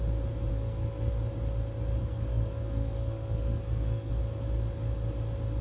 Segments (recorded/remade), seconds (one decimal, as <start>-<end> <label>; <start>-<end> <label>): 0.0-0.5 recorded; 0.5-1.1 remade; 1.1-2.0 recorded; 2.0-4.1 remade; 4.1-5.6 recorded